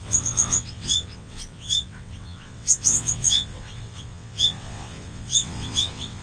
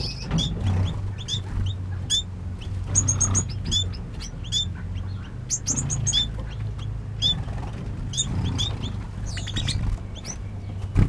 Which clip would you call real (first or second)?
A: second